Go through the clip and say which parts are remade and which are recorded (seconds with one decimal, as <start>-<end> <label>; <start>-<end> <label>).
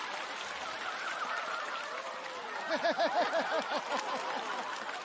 0.0-5.0 recorded